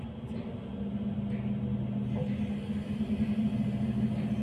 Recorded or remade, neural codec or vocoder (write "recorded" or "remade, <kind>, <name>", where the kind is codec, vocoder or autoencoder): recorded